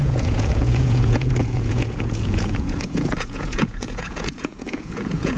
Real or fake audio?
fake